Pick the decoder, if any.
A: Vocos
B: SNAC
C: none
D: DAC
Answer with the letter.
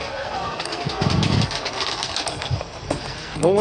B